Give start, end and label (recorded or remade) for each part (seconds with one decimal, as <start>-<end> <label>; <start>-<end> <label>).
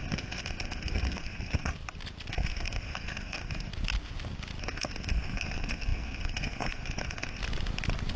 0.0-1.7 remade; 1.7-2.3 recorded; 2.3-3.7 remade; 3.7-4.6 recorded; 4.6-7.4 remade; 7.4-8.2 recorded